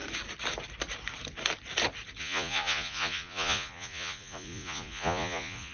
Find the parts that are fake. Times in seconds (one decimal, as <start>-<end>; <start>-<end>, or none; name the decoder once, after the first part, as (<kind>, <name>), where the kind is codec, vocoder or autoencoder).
2.2-5.7 (vocoder, Vocos)